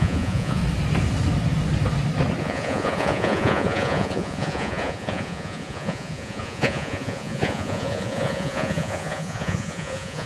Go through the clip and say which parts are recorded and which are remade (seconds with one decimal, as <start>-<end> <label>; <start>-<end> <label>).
0.0-0.6 remade; 0.6-2.4 recorded; 2.4-10.3 remade